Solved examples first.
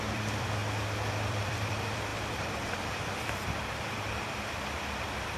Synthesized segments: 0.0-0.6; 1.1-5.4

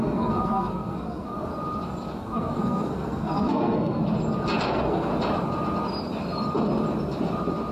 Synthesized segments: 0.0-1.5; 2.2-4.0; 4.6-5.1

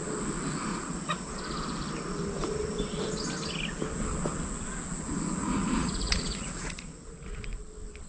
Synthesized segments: 0.7-1.3; 5.4-7.4

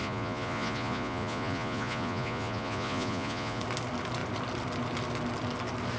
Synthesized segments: 0.0-3.6

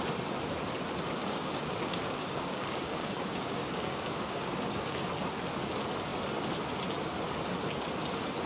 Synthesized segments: 1.2-5.1

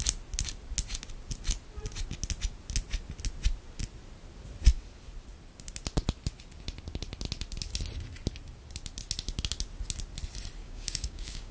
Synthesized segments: 10.6-11.5

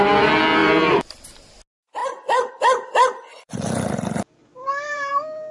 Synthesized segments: 0.6-1.4; 4.4-5.1